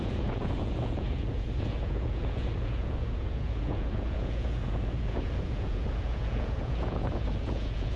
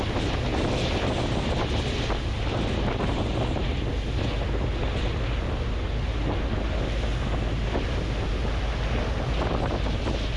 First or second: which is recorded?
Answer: second